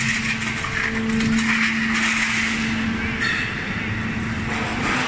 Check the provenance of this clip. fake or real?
real